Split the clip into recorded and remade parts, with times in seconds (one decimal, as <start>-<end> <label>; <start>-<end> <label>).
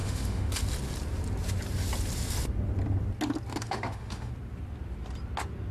0.0-0.5 remade; 0.5-3.5 recorded; 3.5-4.3 remade; 4.3-5.7 recorded